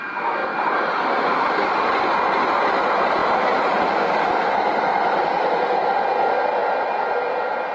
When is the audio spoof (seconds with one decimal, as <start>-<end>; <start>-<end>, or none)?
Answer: 0.5-1.6; 3.2-5.9